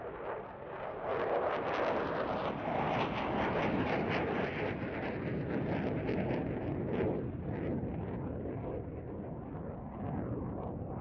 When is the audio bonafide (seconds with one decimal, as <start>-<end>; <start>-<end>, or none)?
0.0-11.0